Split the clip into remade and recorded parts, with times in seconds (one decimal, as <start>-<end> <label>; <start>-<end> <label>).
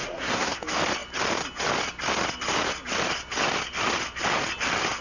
0.0-0.6 remade; 0.6-5.0 recorded